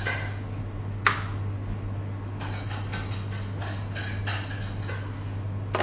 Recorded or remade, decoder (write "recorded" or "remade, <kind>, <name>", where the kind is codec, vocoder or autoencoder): recorded